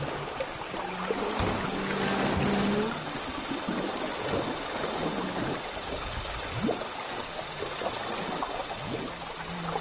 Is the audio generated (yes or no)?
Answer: no